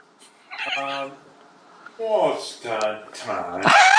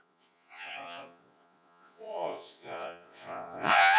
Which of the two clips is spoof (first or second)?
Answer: second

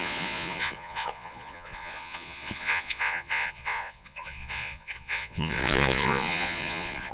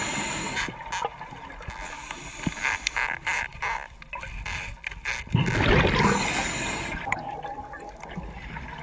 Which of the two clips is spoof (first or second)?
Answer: first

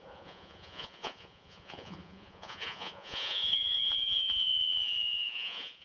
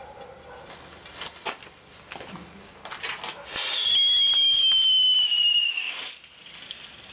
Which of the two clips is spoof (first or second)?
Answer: first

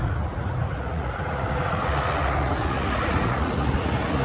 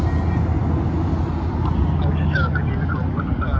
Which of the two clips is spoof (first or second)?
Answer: first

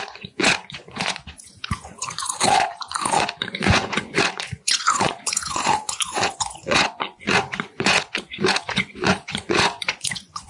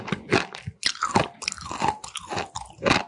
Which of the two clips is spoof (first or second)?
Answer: first